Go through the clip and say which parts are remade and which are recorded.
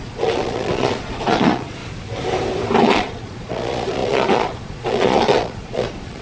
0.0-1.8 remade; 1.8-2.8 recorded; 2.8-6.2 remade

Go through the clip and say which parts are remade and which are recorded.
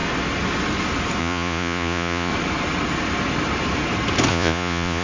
0.0-1.2 recorded; 1.2-2.3 remade; 2.3-4.3 recorded; 4.3-5.0 remade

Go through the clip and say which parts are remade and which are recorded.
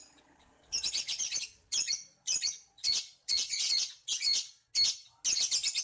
0.0-4.6 remade; 4.6-5.8 recorded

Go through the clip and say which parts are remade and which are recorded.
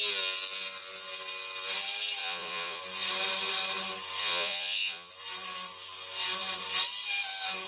0.0-2.2 recorded; 2.2-2.8 remade; 2.8-4.2 recorded; 4.2-5.1 remade; 5.1-7.7 recorded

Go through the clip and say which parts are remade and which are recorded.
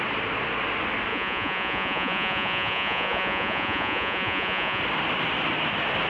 0.0-1.1 recorded; 1.1-4.8 remade; 4.8-6.1 recorded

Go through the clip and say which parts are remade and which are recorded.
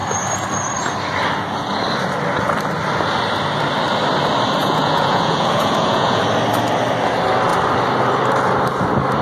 0.0-4.6 recorded; 4.6-6.2 remade; 6.2-9.2 recorded